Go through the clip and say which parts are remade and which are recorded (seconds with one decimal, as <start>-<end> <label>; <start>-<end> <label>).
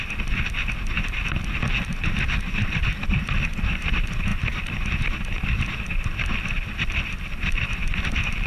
0.0-8.5 recorded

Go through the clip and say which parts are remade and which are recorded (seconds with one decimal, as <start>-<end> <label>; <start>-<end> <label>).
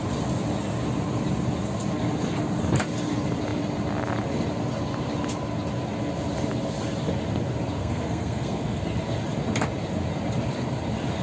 0.0-7.8 recorded; 7.8-8.8 remade; 8.8-11.2 recorded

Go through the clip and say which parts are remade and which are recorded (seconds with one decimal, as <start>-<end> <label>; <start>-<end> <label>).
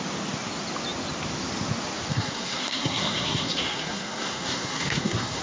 0.0-2.1 recorded; 2.1-5.4 remade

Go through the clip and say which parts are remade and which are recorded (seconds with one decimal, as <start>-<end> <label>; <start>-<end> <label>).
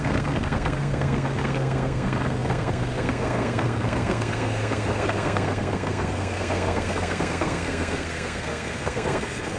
0.0-9.6 remade